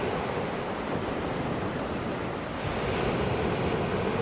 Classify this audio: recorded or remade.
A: recorded